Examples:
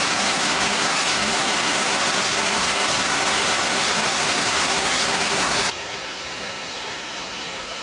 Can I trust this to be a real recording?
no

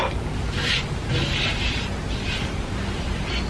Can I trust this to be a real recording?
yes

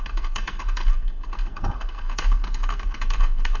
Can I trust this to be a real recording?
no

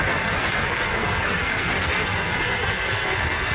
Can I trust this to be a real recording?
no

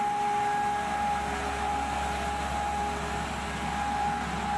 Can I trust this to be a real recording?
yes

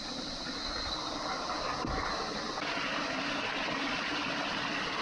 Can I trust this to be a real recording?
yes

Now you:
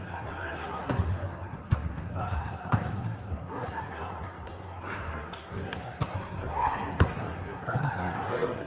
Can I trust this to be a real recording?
no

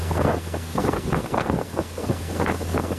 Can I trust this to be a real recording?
no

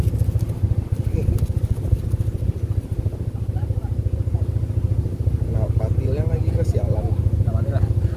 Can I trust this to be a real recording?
yes